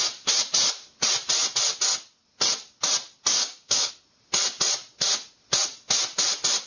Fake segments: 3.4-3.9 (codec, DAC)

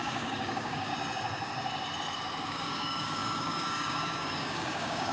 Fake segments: 0.0-0.9 (codec, DAC); 2.5-5.1

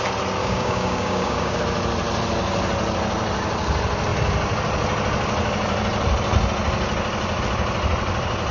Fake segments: 0.4-1.6 (codec, DAC)

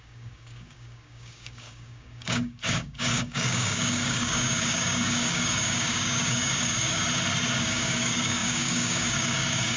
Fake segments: 0.0-7.0 (codec, DAC); 7.6-9.8